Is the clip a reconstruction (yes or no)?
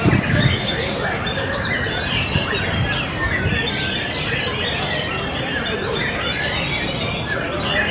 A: no